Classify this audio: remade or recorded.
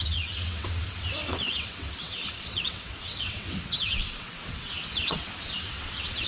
remade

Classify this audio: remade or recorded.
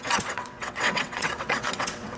remade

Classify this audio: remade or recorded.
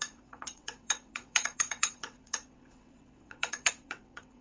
remade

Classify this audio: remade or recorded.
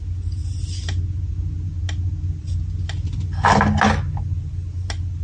recorded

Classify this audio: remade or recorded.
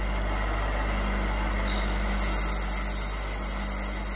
recorded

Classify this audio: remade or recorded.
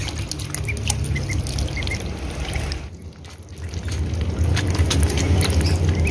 recorded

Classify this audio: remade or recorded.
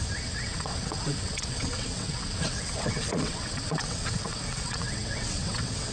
remade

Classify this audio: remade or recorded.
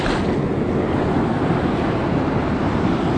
recorded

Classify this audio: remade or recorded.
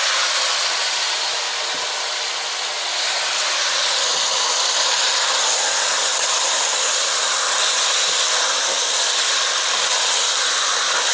recorded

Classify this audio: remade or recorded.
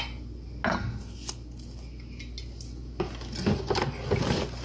recorded